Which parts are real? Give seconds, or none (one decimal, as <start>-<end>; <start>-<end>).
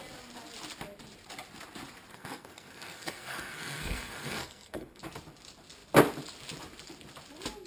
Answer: 0.0-2.1; 5.0-7.7